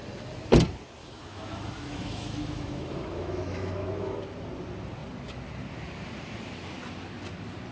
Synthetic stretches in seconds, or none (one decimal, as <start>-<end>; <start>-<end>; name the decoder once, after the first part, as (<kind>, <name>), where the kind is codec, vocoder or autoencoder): 1.0-4.2 (autoencoder, DAC-VAE)